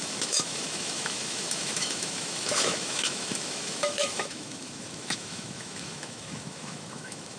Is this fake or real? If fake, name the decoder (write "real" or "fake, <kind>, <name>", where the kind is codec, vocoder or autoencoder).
fake, autoencoder, DAC-VAE